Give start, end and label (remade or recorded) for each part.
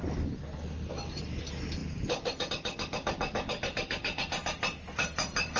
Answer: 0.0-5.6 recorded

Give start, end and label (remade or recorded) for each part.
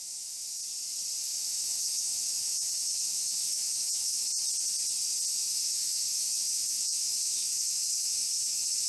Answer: 0.0-0.6 remade; 0.6-1.2 recorded; 1.2-4.3 remade; 4.3-5.3 recorded; 5.3-8.9 remade